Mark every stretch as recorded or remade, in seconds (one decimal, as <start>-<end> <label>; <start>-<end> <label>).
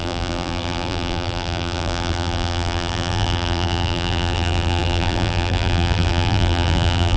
0.0-7.2 remade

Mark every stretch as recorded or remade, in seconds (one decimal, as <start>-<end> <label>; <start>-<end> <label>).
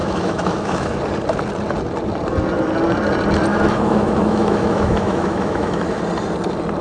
0.0-1.0 remade; 1.0-3.5 recorded; 3.5-6.0 remade; 6.0-6.8 recorded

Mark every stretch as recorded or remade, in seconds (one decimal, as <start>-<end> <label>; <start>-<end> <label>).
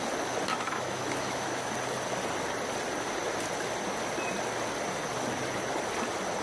0.0-0.5 recorded; 0.5-1.7 remade; 1.7-6.4 recorded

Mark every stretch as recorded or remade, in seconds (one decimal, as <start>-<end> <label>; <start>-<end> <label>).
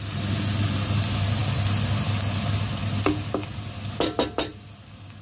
0.0-5.2 recorded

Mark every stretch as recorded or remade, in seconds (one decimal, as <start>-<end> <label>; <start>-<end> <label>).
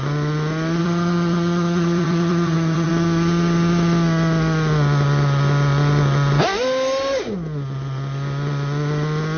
0.0-0.8 recorded; 0.8-2.9 remade; 2.9-9.4 recorded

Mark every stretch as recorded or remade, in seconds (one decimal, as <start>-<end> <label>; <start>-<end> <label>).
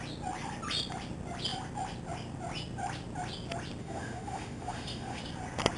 0.0-3.8 recorded; 3.8-5.2 remade; 5.2-5.8 recorded